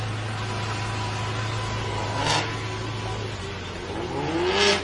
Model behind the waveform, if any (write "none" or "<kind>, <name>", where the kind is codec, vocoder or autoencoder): none